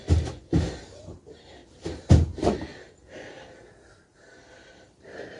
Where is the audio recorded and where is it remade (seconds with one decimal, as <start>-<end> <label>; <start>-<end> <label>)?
0.0-0.9 recorded; 0.9-1.6 remade; 1.6-3.3 recorded; 3.3-5.4 remade